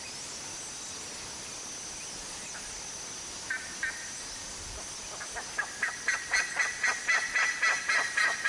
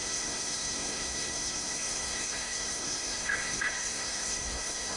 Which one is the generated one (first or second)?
second